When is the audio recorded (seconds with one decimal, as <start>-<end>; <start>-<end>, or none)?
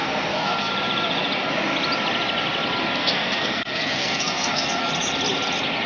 0.7-3.0; 4.9-5.9